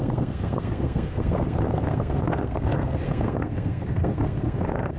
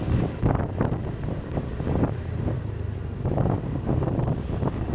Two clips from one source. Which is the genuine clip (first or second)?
second